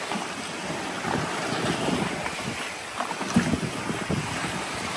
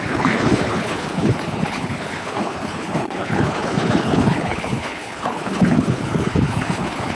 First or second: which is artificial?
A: second